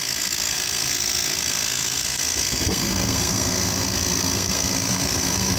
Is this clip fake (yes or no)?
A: yes